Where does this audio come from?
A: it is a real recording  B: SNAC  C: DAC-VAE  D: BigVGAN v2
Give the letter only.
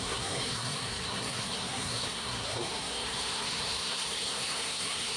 B